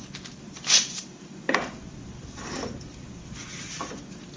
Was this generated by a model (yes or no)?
yes